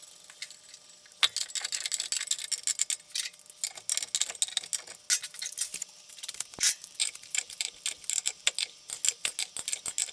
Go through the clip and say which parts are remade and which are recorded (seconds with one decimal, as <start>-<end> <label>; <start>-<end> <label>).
0.0-5.7 recorded; 5.7-7.7 remade; 7.7-10.1 recorded